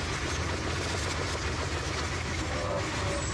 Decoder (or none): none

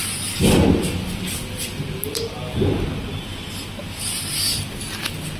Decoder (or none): none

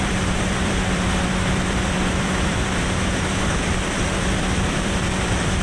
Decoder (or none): vocoder, BigVGAN v2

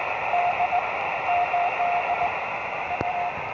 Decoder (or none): none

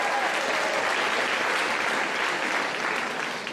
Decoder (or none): none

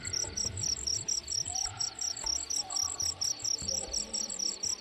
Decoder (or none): vocoder, BigVGAN v2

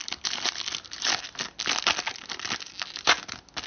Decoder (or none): none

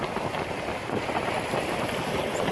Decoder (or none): none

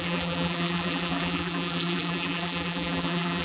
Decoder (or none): vocoder, BigVGAN v2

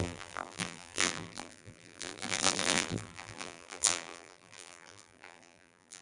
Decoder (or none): vocoder, BigVGAN v2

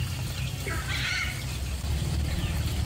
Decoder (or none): vocoder, BigVGAN v2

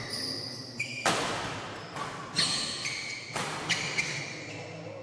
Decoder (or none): none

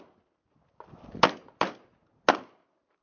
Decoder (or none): none